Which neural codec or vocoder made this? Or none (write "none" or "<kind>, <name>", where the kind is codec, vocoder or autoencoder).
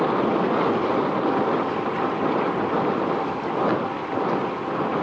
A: none